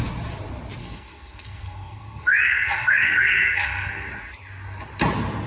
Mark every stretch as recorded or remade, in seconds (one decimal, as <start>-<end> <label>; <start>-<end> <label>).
0.0-0.8 recorded; 0.8-4.1 remade; 4.1-5.5 recorded